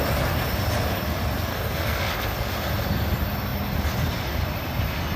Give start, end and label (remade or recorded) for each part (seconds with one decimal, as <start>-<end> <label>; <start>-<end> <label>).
0.0-1.5 recorded; 1.5-2.5 remade; 2.5-5.2 recorded